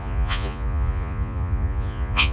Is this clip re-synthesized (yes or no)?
yes